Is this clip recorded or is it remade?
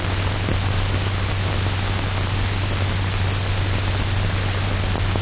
recorded